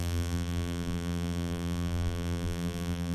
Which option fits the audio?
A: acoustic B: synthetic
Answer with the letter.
B